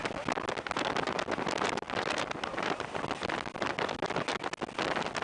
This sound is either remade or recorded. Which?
recorded